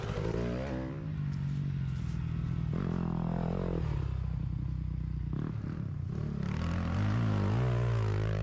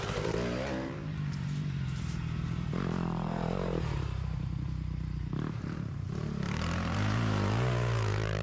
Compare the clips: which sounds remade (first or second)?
second